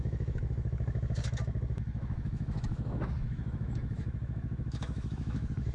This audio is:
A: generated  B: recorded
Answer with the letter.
A